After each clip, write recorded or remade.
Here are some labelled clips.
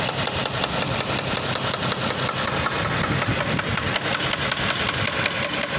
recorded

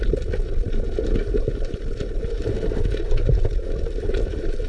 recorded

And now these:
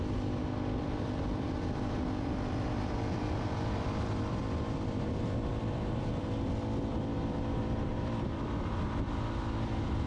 remade